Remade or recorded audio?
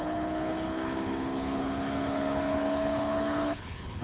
remade